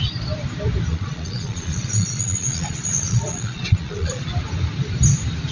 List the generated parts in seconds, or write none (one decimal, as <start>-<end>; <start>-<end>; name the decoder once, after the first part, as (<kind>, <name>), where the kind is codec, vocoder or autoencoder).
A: 0.9-4.2 (vocoder, Vocos)